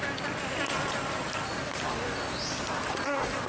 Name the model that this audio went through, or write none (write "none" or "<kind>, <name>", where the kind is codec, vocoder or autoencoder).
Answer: none